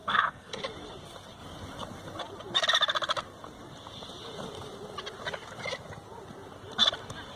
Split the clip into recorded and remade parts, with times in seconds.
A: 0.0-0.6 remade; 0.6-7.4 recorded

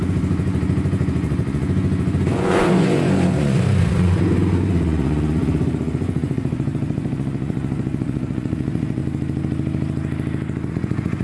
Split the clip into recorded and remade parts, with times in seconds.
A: 0.0-9.0 remade; 9.0-10.7 recorded; 10.7-11.2 remade

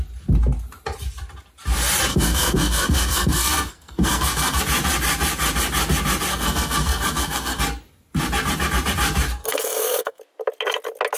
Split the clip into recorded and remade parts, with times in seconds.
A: 0.0-2.1 recorded; 2.1-4.6 remade; 4.6-6.3 recorded; 6.3-7.6 remade; 7.6-9.4 recorded; 9.4-10.2 remade; 10.2-11.2 recorded